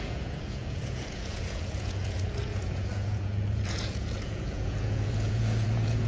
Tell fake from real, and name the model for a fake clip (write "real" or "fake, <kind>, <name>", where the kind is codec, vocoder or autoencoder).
fake, vocoder, Vocos